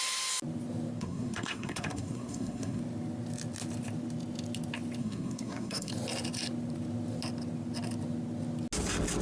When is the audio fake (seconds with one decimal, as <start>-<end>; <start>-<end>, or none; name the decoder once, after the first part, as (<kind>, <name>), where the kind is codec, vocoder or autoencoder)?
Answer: 1.0-2.8 (codec, SNAC); 5.0-5.9